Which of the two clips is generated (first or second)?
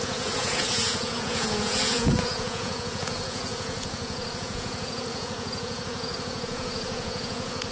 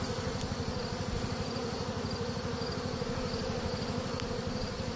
first